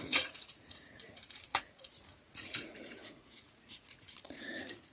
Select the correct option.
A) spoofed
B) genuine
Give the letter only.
A